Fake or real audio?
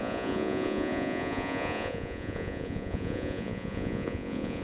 fake